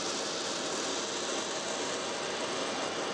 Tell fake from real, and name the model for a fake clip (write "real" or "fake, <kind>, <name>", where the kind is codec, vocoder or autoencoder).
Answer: real